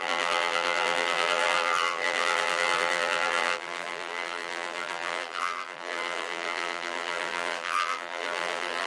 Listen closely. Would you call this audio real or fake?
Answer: fake